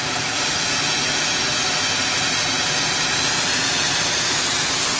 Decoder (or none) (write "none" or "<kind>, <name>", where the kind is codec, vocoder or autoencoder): none